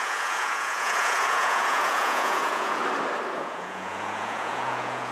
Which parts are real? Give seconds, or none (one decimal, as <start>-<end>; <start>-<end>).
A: 2.8-3.3

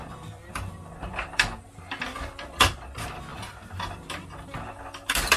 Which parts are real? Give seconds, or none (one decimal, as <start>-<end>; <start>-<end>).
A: 0.8-3.3; 4.1-5.4

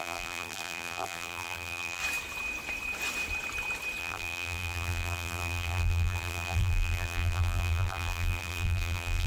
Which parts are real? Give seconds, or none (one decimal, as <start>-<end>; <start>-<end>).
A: 2.0-4.0

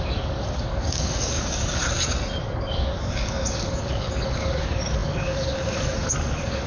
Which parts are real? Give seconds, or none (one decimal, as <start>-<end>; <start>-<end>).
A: 1.8-2.4

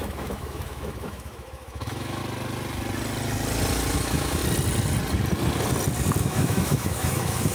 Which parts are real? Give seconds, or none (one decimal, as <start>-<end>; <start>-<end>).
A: 2.2-3.9; 4.4-6.2

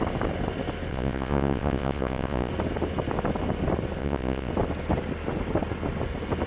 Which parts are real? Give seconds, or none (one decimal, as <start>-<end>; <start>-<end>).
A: 0.0-0.9; 2.5-4.0; 4.5-6.5

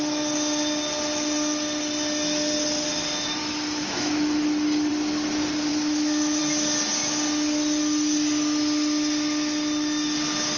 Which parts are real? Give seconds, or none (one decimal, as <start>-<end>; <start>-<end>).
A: 0.0-3.4; 4.9-5.7; 6.4-10.6

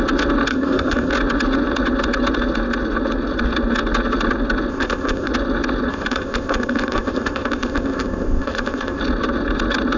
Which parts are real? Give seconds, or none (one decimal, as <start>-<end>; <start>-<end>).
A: 0.0-0.5; 1.1-4.7; 5.3-5.9; 9.0-10.0